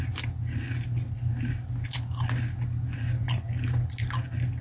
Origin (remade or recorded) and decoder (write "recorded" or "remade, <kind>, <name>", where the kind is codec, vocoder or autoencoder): recorded